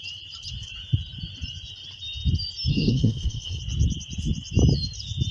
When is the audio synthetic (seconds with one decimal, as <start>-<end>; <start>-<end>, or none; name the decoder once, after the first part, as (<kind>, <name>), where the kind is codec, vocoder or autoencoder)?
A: 2.7-3.6 (codec, SNAC)